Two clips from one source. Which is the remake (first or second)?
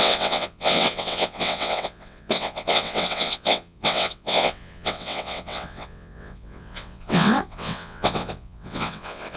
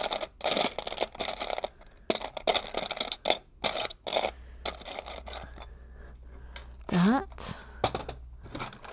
first